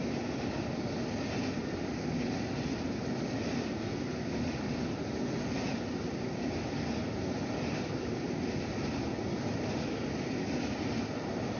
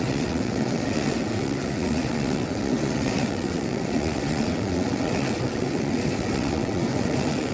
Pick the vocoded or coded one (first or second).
second